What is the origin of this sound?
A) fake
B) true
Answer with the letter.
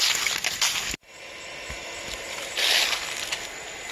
B